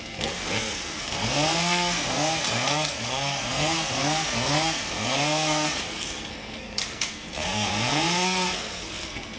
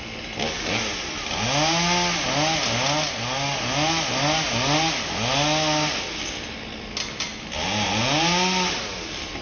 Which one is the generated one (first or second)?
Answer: first